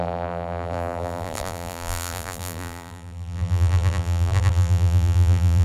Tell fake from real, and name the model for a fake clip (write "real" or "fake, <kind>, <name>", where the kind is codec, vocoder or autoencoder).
fake, vocoder, BigVGAN v2